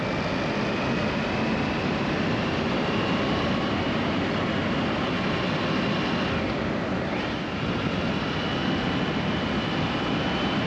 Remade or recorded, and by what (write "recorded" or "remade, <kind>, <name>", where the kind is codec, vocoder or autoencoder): recorded